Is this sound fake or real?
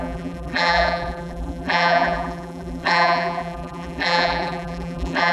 fake